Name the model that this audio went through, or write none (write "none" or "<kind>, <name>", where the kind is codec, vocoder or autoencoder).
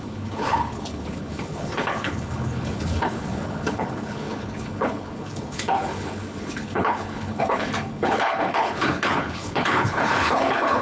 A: codec, HILCodec